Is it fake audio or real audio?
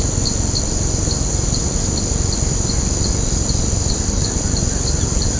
real